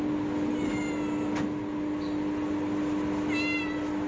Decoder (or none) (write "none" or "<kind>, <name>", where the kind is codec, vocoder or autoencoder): none